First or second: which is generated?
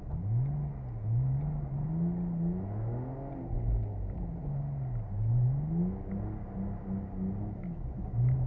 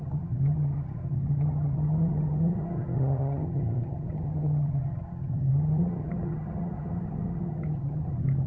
second